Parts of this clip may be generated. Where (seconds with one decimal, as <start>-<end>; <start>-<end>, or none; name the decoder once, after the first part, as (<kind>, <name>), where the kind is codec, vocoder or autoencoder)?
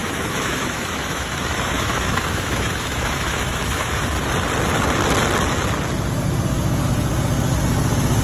0.0-4.0 (autoencoder, DAC-VAE)